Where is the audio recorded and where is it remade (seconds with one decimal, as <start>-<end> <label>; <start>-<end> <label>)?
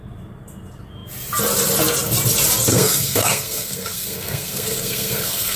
0.0-2.7 recorded; 2.7-5.6 remade